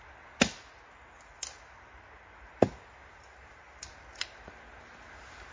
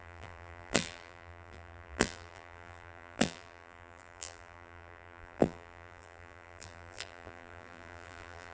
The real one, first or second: first